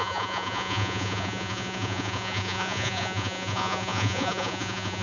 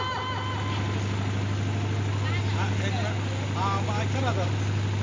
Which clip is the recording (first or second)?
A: second